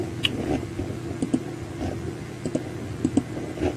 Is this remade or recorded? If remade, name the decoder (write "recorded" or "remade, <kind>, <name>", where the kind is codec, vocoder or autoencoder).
recorded